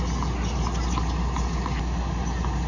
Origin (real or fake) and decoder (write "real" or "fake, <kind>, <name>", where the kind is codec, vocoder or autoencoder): real